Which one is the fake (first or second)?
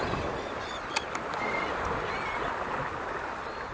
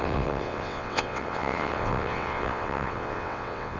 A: second